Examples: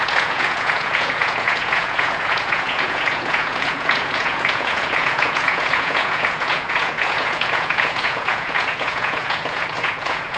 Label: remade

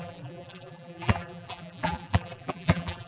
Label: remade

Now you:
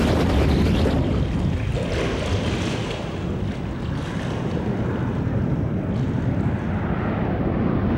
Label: recorded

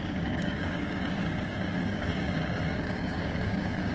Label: remade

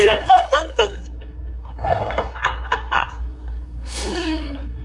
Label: remade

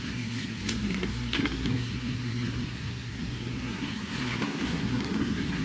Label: remade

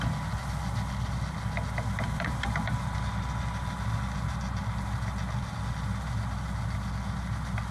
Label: recorded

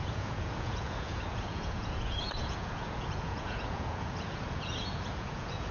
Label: remade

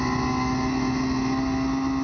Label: recorded